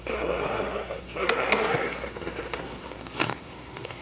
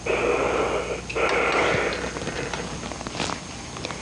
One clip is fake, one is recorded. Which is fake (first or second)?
first